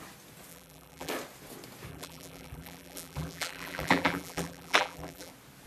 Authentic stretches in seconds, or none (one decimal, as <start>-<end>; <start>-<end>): 0.0-0.5; 1.1-1.9; 5.3-5.7